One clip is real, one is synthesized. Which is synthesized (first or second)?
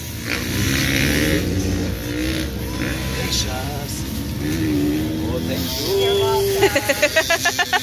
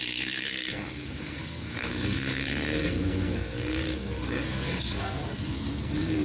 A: second